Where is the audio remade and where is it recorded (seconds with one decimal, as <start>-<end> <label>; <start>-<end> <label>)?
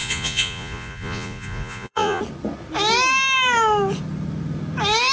0.0-2.2 remade; 2.2-5.1 recorded